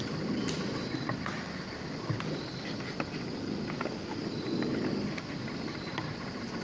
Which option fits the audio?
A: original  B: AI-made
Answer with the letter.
A